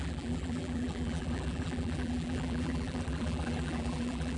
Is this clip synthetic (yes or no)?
yes